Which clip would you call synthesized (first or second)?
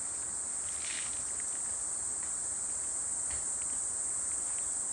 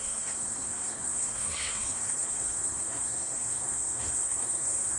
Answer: second